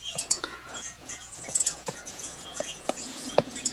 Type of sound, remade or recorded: remade